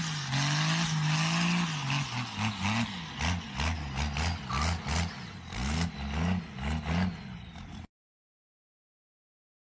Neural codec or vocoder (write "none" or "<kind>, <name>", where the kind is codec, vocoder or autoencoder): none